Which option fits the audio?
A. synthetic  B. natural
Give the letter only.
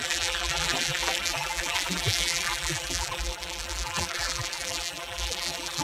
A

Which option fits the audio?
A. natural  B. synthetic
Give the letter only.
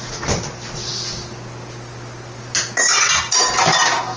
A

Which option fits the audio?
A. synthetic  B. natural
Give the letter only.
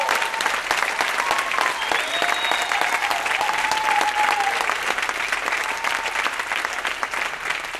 B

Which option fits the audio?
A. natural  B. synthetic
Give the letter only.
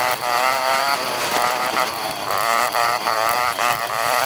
B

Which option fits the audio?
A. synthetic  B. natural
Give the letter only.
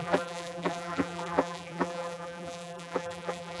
A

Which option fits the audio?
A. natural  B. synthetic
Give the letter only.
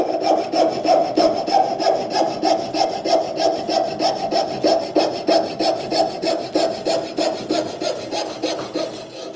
A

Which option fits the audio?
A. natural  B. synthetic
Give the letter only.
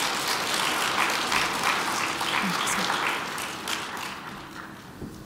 A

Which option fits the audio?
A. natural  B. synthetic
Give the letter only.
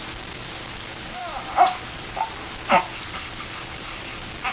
B